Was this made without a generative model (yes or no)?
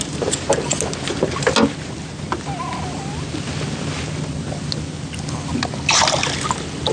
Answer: yes